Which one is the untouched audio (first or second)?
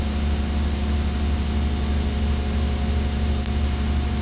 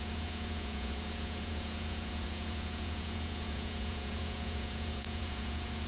first